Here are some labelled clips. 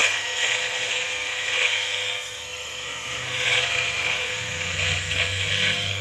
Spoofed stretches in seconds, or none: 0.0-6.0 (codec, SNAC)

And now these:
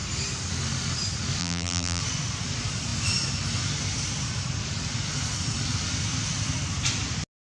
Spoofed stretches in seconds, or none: 1.4-2.0 (vocoder, BigVGAN v2)

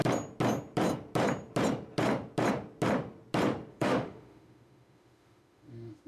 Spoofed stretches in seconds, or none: 3.7-6.1 (autoencoder, DAC-VAE)

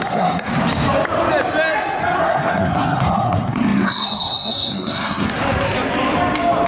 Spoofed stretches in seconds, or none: 0.0-0.5 (codec, SNAC); 2.2-5.4

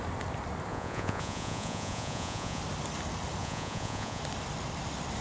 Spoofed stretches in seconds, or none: 0.7-2.6 (vocoder, Vocos); 3.4-4.2

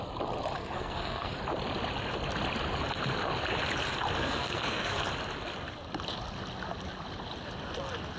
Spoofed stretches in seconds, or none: 0.6-1.3 (codec, SNAC); 4.2-5.0

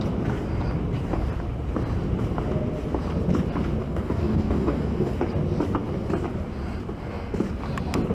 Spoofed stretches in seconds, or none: 3.8-5.2 (codec, DAC)